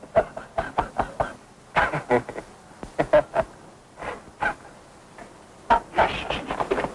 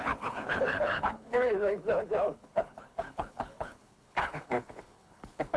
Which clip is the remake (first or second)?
second